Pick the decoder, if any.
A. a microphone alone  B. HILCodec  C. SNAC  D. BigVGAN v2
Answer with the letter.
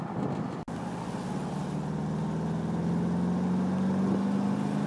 A